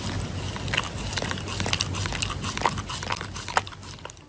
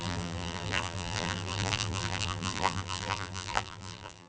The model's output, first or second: second